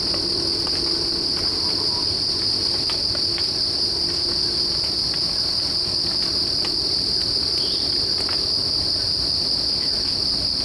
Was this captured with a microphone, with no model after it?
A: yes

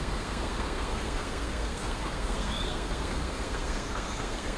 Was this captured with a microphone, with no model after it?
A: no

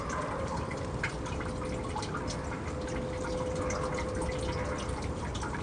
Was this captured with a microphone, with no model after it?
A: yes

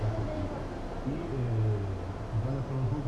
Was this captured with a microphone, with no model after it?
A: yes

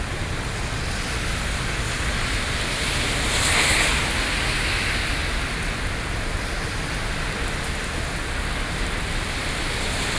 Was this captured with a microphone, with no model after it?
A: yes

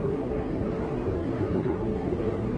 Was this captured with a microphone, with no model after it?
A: no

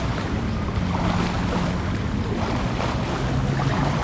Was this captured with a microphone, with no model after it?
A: yes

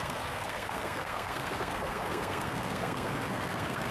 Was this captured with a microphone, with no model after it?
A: no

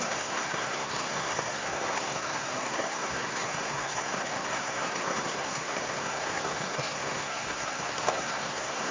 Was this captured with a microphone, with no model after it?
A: no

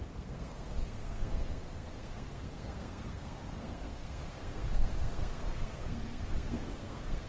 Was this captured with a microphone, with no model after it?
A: no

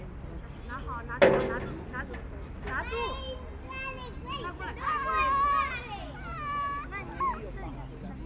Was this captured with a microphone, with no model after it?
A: yes